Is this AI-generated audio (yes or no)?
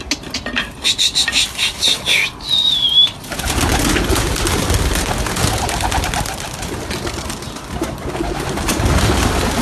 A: no